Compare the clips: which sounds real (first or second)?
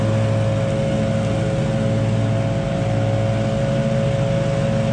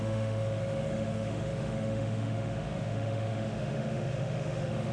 first